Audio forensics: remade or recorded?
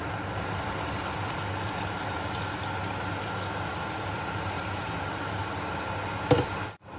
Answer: recorded